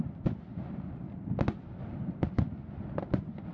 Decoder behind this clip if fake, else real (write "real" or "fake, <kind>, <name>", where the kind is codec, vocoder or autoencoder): real